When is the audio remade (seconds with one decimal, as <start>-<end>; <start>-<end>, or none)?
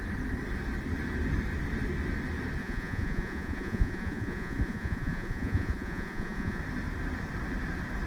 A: 2.6-6.6